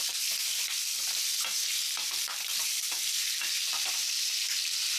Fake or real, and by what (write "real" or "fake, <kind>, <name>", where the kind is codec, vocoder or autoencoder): fake, vocoder, BigVGAN v2